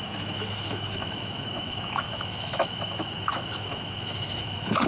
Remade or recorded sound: remade